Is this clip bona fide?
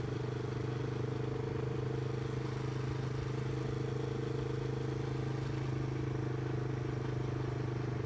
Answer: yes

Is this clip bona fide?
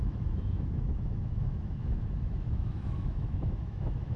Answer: no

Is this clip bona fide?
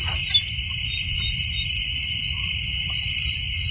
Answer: yes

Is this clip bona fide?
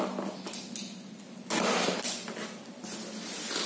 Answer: yes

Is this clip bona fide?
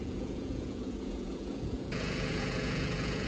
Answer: no